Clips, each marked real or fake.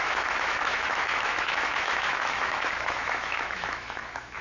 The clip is fake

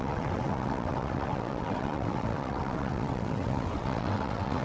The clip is fake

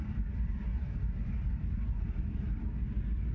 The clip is real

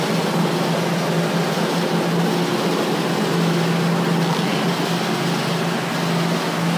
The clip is real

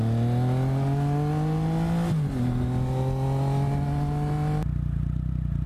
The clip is real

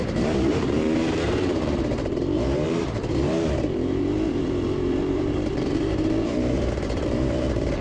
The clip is fake